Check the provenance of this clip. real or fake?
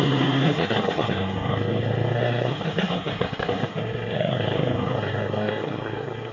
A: fake